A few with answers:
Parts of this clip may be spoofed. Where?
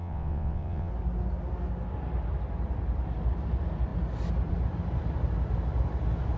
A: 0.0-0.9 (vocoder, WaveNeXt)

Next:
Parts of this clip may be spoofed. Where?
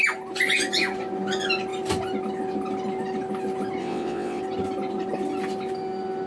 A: 3.8-4.4 (vocoder, WaveNeXt)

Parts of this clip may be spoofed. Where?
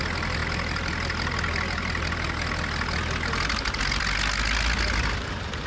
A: none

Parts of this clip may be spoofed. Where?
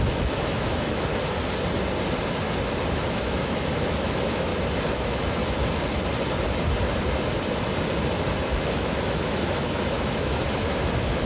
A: 0.0-1.1 (autoencoder, DAC-VAE); 2.9-4.5; 5.0-5.4; 8.4-11.2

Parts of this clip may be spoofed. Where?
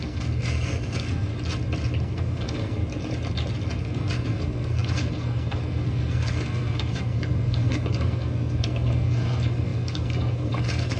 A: 0.0-1.3 (codec, SNAC); 2.0-2.8; 3.8-11.0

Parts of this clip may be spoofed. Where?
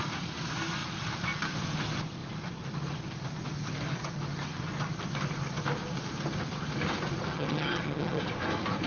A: 7.3-8.2 (vocoder, HiFi-GAN)